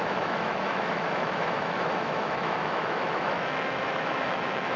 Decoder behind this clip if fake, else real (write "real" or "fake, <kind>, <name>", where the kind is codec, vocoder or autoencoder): fake, autoencoder, DAC-VAE